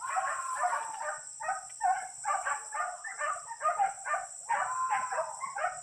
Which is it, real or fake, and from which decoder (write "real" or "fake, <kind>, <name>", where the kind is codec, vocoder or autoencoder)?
real